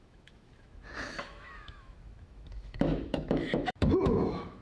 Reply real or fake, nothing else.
fake